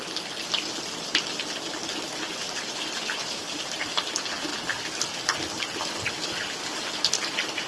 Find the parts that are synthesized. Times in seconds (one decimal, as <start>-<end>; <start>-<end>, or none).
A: 2.1-4.0